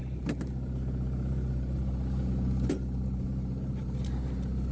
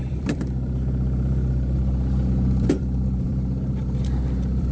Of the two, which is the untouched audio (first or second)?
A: first